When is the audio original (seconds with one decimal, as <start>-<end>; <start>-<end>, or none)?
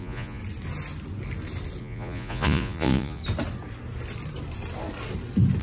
0.4-1.8; 3.2-5.6